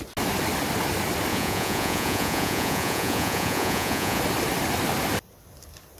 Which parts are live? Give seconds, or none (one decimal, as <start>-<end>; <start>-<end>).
0.0-1.3; 4.2-6.0